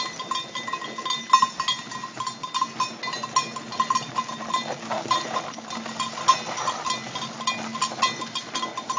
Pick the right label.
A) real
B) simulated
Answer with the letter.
A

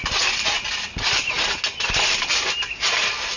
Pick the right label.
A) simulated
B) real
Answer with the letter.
B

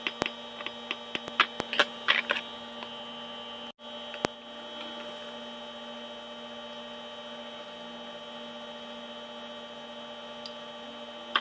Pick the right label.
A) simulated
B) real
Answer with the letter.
B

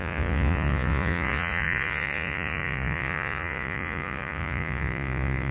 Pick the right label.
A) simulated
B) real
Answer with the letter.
A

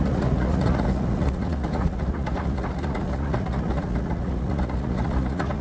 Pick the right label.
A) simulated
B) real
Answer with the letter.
A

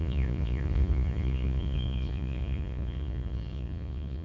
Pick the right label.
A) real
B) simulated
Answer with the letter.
B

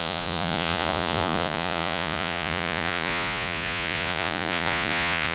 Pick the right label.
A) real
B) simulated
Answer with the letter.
B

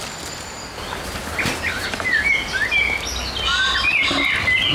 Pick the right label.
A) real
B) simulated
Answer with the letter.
A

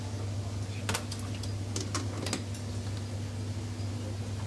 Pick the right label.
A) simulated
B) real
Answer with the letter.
B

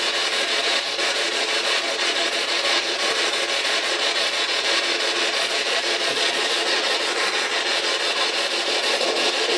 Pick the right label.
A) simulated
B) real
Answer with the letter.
A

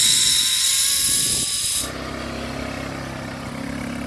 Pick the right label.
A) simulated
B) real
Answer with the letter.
B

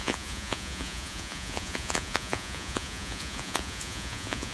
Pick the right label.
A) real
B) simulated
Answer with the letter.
B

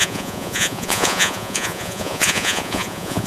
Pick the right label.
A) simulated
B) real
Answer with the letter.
A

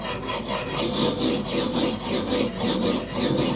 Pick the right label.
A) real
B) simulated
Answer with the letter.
A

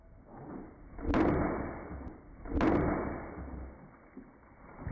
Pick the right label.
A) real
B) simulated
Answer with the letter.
A